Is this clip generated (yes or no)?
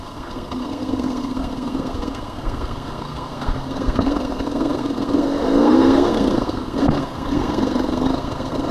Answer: yes